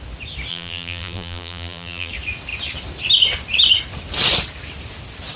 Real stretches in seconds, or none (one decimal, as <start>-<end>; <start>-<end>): 0.0-0.5; 2.1-5.4